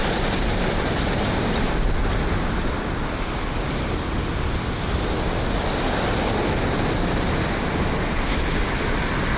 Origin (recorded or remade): recorded